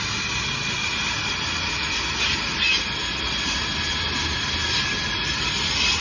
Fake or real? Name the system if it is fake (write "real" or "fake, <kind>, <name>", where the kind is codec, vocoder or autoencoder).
real